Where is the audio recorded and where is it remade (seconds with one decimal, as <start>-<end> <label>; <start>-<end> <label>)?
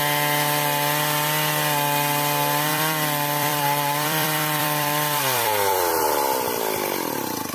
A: 0.0-2.7 recorded; 2.7-7.5 remade